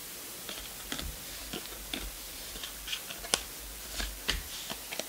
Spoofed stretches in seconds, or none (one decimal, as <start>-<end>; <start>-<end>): none